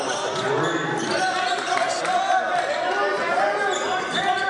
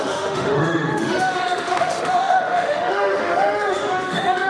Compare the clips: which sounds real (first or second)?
first